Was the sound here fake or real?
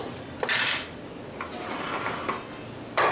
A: real